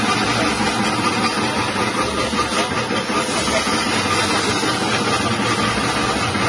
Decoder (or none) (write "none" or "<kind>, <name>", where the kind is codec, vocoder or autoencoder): none